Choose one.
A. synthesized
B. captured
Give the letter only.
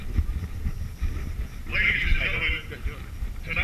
B